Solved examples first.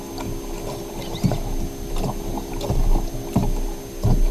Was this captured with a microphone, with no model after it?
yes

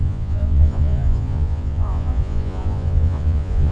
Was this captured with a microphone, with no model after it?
no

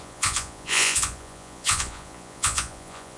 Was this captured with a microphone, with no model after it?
no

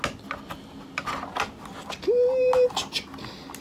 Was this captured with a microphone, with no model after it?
yes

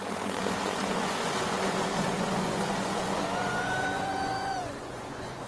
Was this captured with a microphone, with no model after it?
no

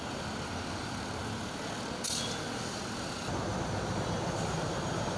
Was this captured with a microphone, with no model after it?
yes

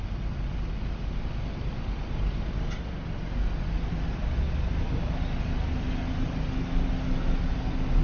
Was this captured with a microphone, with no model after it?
yes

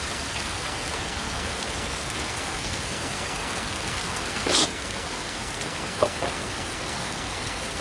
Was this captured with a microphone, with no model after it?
no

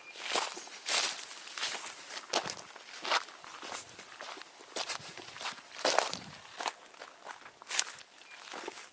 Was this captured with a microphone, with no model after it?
yes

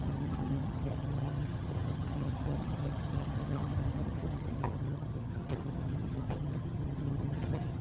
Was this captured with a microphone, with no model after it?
no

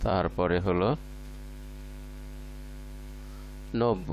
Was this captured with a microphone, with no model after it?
no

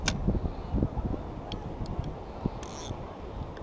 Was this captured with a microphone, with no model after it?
yes